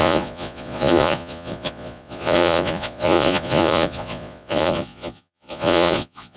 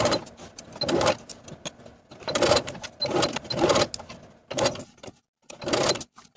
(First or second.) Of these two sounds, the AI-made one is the first